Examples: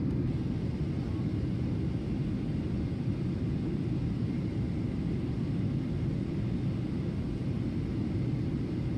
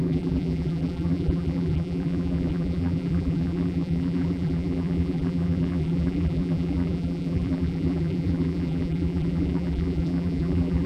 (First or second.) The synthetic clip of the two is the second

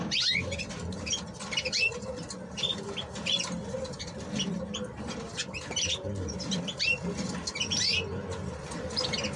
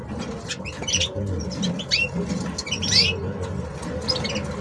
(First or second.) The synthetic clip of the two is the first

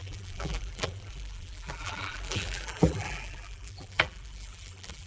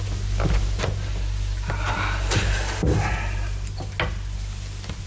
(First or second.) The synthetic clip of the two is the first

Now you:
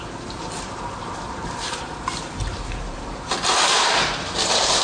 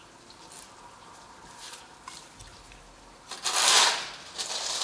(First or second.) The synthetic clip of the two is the first